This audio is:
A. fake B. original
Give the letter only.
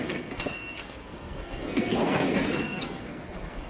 A